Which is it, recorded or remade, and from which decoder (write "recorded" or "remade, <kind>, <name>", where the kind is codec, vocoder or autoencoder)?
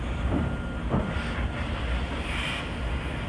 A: recorded